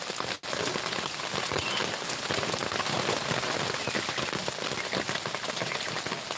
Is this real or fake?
real